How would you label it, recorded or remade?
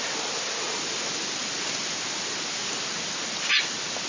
recorded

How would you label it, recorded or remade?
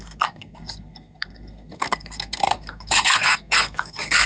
remade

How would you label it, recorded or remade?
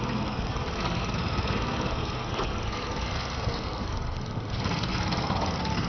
remade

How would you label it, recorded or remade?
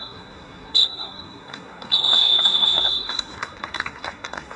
remade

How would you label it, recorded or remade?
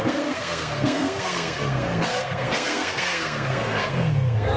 remade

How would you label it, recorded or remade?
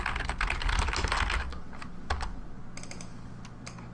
recorded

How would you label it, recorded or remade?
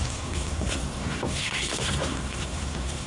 remade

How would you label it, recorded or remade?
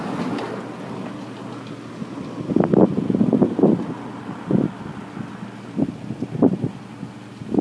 recorded